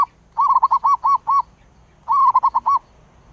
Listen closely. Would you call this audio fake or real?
real